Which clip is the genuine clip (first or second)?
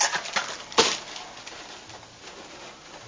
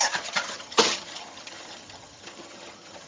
first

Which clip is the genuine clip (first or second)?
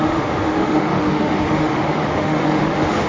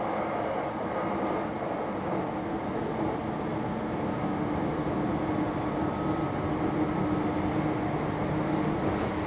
second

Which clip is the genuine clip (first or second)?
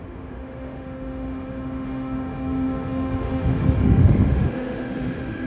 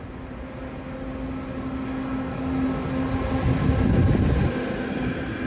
second